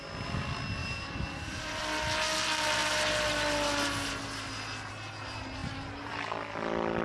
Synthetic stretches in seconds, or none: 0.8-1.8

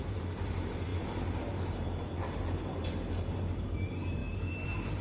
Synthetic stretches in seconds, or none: 0.0-5.0

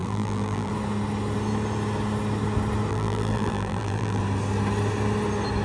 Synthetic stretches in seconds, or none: 0.0-0.7; 2.9-4.2

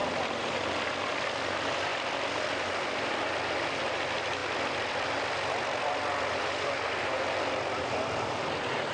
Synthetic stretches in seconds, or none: 0.0-1.1; 1.9-3.8; 4.4-6.4

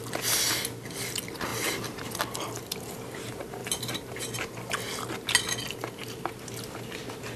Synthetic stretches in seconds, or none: 1.5-2.2; 3.6-4.7